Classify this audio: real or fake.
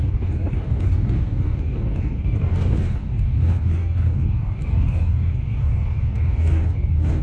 fake